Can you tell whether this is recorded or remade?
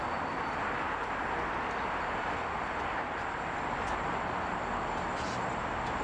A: recorded